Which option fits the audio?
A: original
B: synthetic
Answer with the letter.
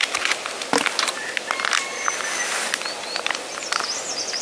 A